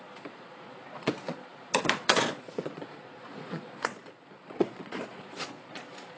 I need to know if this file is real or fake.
fake